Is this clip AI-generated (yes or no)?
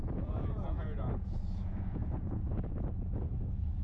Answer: yes